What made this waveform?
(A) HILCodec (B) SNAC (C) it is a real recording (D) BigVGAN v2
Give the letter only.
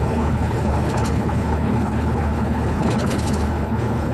A